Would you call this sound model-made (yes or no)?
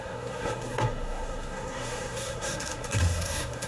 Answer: yes